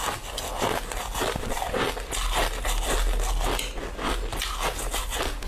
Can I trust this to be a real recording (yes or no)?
yes